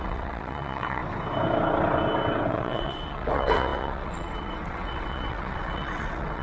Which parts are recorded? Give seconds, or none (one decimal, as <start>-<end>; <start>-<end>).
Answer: 1.0-2.5

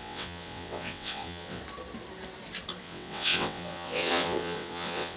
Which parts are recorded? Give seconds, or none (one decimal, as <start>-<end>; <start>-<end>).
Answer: 1.6-2.8